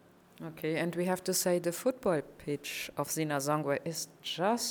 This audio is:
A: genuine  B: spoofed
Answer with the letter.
A